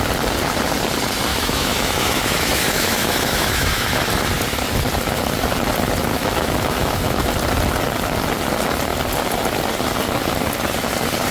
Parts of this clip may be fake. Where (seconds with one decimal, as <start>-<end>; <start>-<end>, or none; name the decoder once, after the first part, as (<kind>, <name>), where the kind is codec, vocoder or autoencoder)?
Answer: 1.3-4.0 (autoencoder, DAC-VAE); 6.1-7.3